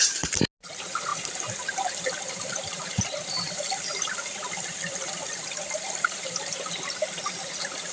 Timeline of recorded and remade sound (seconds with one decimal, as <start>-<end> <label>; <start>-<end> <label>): 0.0-7.9 recorded